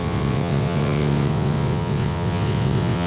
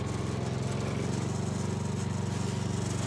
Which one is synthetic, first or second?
first